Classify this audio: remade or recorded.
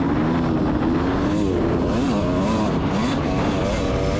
recorded